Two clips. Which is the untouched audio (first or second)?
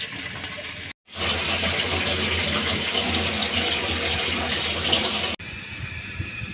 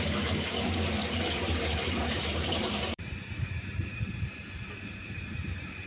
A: first